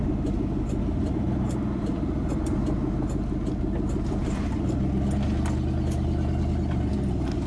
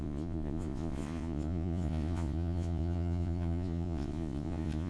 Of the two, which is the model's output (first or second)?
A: second